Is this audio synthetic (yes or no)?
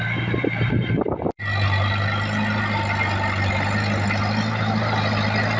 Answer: no